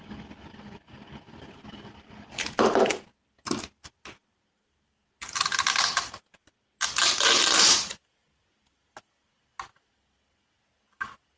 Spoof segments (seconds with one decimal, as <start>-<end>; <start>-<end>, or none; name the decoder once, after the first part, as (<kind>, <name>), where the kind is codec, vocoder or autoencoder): none

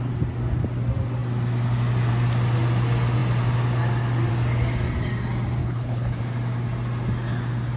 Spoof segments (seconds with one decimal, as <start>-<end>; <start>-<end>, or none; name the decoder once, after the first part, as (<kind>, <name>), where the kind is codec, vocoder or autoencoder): 5.6-6.2 (codec, HILCodec)